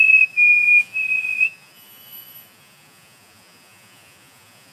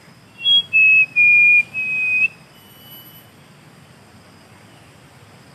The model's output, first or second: first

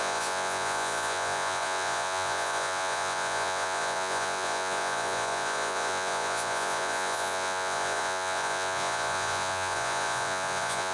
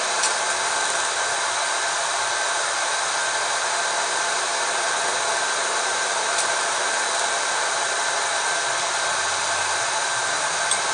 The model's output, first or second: first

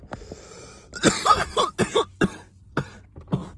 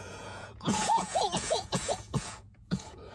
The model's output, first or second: second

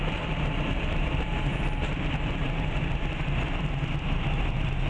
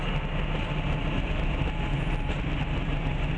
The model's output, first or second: first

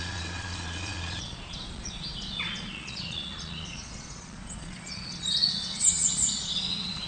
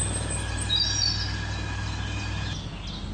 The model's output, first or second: first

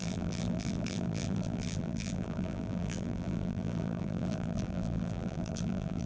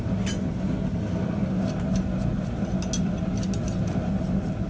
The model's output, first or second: first